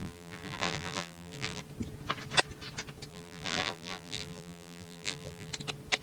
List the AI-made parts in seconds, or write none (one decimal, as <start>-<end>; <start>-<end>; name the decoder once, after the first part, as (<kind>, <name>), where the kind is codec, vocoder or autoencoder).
0.0-1.6 (vocoder, BigVGAN v2); 3.1-5.5